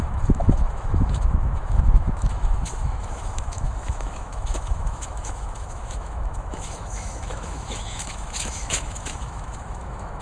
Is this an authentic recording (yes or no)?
no